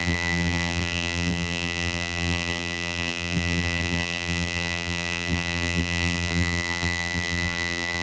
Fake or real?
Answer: fake